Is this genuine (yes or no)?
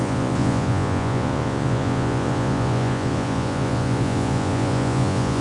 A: no